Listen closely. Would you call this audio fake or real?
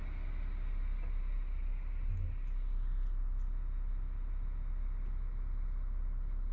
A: real